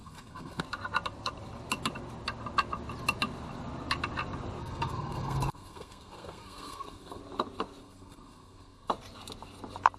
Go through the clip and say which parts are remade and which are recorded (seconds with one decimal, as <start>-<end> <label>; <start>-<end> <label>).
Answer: 0.0-0.6 remade; 0.6-4.6 recorded; 4.6-7.2 remade; 7.2-7.8 recorded; 7.8-8.9 remade; 8.9-10.0 recorded